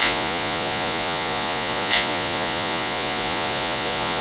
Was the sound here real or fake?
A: fake